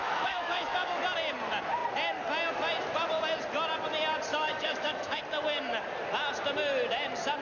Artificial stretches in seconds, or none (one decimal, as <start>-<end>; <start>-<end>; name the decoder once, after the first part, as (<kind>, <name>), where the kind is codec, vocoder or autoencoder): 0.0-1.0 (autoencoder, DAC-VAE); 4.3-5.2